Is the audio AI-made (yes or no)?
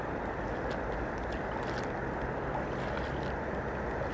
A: no